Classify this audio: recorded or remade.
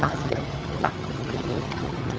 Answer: remade